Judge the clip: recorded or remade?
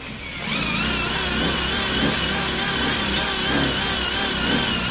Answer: recorded